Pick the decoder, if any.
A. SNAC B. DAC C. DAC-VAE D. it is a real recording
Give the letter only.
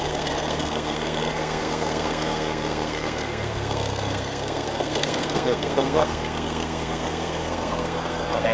A